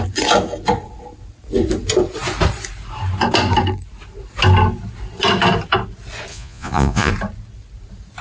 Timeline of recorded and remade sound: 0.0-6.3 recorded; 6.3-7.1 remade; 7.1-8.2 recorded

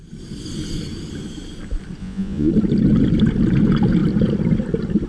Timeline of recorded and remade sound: 0.0-2.0 recorded; 2.0-2.5 remade; 2.5-5.1 recorded

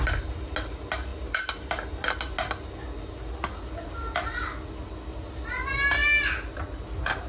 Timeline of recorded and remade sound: 0.0-7.3 recorded

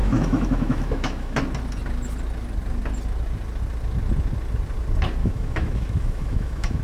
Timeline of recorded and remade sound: 0.0-1.4 remade; 1.4-5.2 recorded; 5.2-6.8 remade

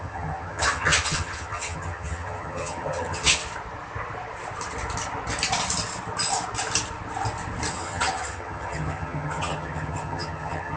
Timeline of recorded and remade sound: 0.0-3.4 remade; 3.4-7.7 recorded; 7.7-10.8 remade